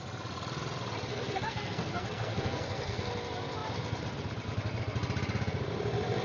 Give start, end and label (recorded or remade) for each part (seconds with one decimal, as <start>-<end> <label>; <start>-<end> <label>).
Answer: 0.0-1.1 recorded; 1.1-3.1 remade; 3.1-6.2 recorded